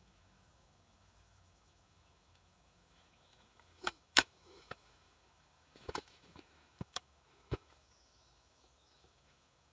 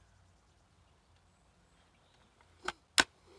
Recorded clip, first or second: second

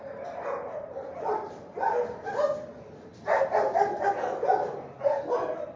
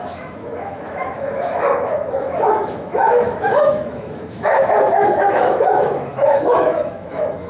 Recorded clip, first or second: first